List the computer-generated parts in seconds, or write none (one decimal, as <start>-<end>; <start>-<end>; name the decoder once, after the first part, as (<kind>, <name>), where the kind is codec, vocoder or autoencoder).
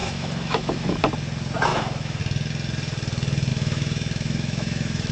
0.0-1.0 (autoencoder, DAC-VAE); 1.7-2.2; 3.5-5.1